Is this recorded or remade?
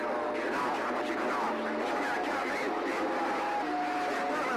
recorded